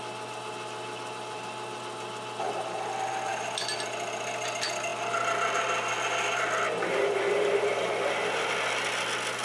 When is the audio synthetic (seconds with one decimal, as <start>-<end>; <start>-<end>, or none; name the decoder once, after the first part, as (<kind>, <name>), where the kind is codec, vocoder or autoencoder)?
none